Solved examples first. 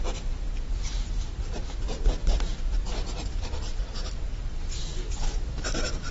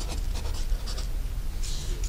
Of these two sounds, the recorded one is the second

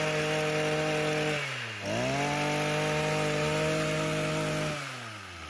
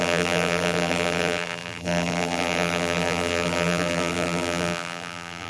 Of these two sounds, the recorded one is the first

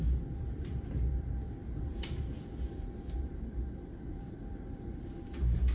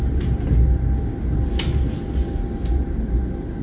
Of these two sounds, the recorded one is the second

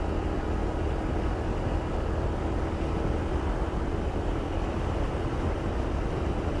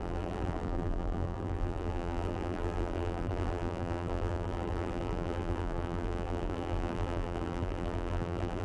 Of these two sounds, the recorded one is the first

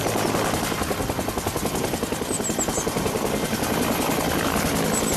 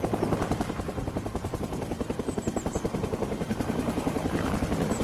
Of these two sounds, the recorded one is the first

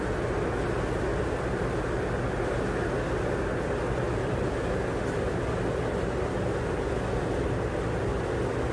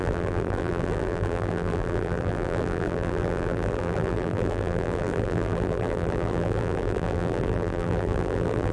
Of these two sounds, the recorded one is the first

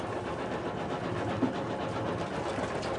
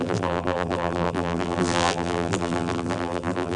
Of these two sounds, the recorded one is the first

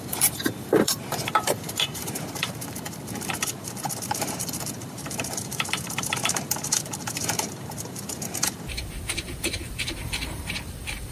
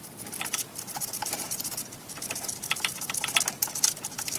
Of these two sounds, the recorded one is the second